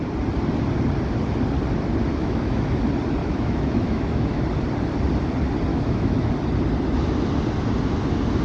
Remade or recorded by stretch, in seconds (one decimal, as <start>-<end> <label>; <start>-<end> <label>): 0.0-2.1 recorded; 2.1-2.8 remade; 2.8-3.2 recorded; 3.2-4.4 remade; 4.4-5.7 recorded; 5.7-6.3 remade; 6.3-8.4 recorded

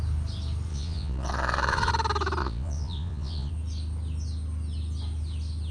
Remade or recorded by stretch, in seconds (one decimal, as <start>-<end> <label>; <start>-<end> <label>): 0.0-0.7 recorded; 0.7-1.9 remade; 1.9-2.4 recorded; 2.4-3.5 remade; 3.5-5.7 recorded

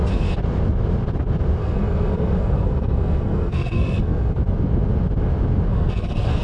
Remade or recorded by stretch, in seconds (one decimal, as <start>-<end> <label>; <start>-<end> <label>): 0.0-1.6 recorded; 1.6-4.4 remade; 4.4-5.7 recorded; 5.7-6.4 remade

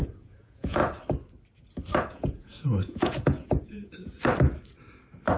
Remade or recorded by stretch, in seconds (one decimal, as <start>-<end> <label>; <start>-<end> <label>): 0.0-0.8 remade; 0.8-2.1 recorded; 2.1-4.1 remade; 4.1-5.4 recorded

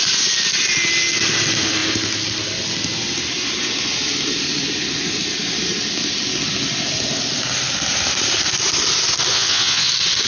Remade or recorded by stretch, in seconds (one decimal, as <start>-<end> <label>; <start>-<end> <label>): 0.0-9.3 recorded; 9.3-9.9 remade; 9.9-10.3 recorded